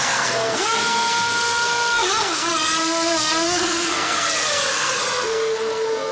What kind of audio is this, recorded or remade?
remade